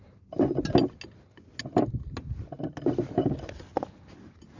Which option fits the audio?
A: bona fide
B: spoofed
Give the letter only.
A